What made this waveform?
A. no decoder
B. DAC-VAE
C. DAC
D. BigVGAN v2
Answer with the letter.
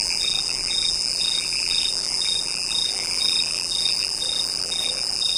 D